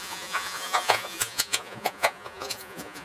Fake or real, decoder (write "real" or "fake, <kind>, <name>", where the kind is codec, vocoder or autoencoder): fake, vocoder, Vocos